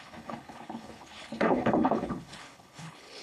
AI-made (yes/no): yes